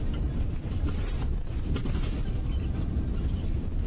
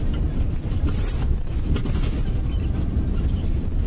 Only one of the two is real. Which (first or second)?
first